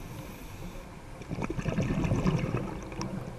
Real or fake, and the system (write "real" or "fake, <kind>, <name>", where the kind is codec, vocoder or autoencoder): real